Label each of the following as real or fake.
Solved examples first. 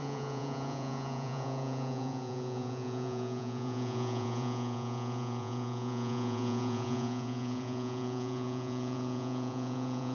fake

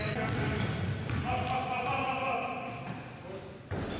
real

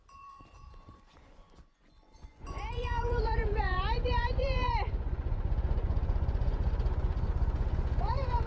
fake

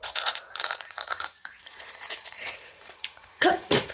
fake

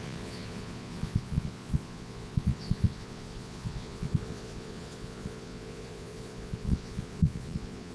fake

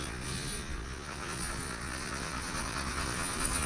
fake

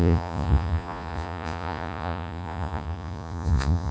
fake